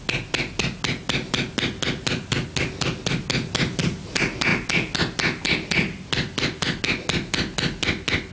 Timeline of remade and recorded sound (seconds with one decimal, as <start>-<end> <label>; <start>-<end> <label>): 0.0-8.3 recorded